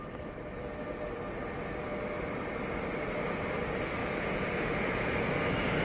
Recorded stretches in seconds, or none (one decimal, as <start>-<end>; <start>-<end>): 0.0-4.0; 5.3-5.8

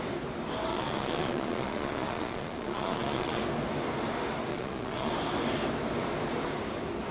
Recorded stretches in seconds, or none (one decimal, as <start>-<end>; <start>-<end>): 0.0-0.7; 3.4-4.5; 5.1-7.1

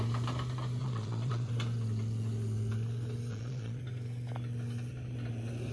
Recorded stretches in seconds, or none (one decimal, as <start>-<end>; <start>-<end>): 0.0-0.8; 1.5-3.3; 3.8-5.7

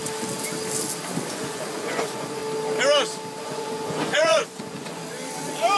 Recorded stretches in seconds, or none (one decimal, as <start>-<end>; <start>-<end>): 0.0-1.3; 2.4-3.4; 5.0-5.8

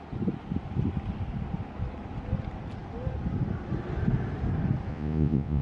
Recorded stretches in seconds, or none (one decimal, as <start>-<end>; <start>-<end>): 0.0-4.9